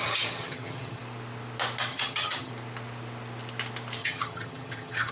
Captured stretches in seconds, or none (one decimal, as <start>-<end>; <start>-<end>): 1.0-1.9; 2.5-4.0